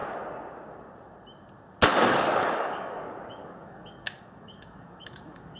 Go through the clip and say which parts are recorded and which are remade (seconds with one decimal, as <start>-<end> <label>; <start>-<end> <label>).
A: 0.0-1.9 recorded; 1.9-5.6 remade